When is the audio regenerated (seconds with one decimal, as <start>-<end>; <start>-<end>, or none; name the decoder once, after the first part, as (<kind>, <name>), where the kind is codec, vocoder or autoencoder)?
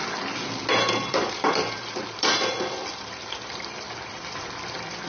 0.7-5.1 (vocoder, BigVGAN v2)